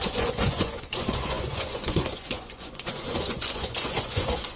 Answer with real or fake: fake